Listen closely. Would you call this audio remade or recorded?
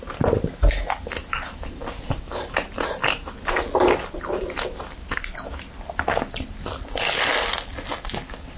recorded